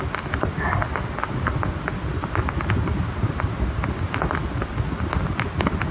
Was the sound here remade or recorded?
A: recorded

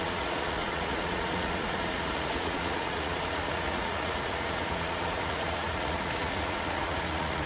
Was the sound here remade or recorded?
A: remade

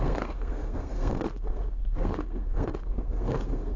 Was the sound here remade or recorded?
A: remade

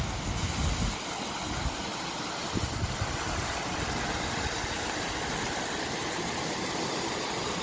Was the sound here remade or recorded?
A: recorded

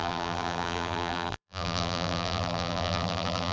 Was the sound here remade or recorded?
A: remade